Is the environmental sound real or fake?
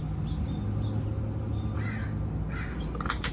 real